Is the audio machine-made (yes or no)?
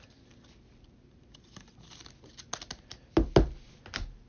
no